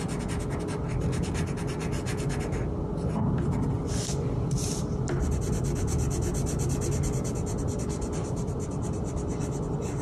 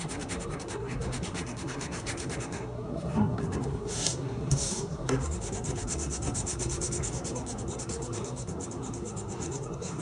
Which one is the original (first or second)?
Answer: first